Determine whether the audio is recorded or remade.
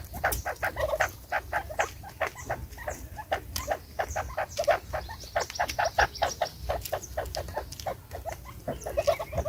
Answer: recorded